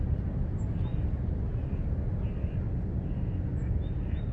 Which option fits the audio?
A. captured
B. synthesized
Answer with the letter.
A